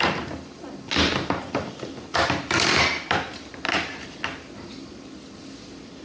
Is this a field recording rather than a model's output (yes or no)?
yes